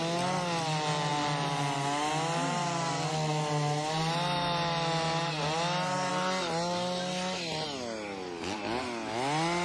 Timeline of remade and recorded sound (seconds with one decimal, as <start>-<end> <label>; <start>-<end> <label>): 0.0-9.6 recorded

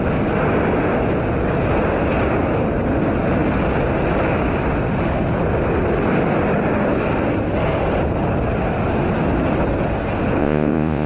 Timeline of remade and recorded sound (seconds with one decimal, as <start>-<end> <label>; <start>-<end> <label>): 0.0-10.4 recorded; 10.4-11.1 remade

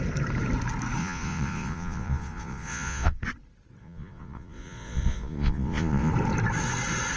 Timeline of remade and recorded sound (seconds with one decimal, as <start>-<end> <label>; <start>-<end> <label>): 0.0-1.0 recorded; 1.0-3.2 remade; 3.2-3.8 recorded; 3.8-6.1 remade; 6.1-7.2 recorded

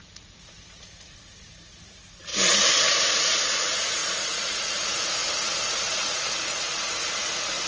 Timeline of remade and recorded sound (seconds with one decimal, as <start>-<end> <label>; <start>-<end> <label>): 0.0-2.3 remade; 2.3-3.2 recorded; 3.2-7.7 remade

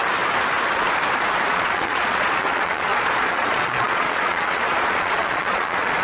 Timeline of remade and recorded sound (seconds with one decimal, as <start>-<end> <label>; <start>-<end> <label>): 0.0-1.5 recorded; 1.5-6.0 remade

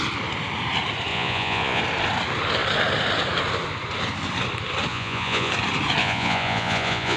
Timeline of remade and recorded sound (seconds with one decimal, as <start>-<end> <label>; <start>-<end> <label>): 0.0-1.1 recorded; 1.1-1.8 remade; 1.8-4.9 recorded; 4.9-5.5 remade; 5.5-6.0 recorded; 6.0-7.2 remade

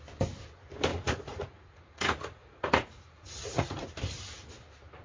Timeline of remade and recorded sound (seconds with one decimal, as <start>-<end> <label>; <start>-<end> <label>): 0.0-0.9 recorded; 0.9-3.9 remade; 3.9-5.0 recorded

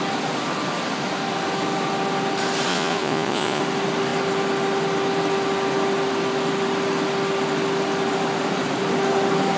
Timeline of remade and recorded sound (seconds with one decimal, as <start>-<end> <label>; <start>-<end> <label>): 0.0-2.7 recorded; 2.7-3.6 remade; 3.6-9.6 recorded